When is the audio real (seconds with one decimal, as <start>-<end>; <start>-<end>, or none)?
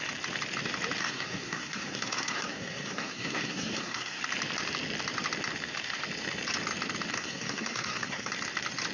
0.0-1.0; 4.2-7.1; 8.3-8.9